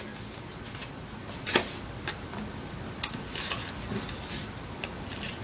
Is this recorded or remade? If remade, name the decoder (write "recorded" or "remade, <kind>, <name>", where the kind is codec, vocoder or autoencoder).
recorded